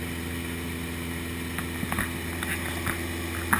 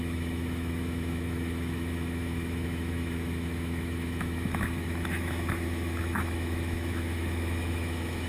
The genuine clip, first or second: first